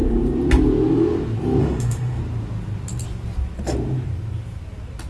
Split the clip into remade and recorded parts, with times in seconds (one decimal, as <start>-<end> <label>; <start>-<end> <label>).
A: 0.0-1.6 recorded; 1.6-2.2 remade; 2.2-5.1 recorded